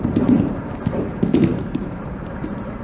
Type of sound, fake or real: fake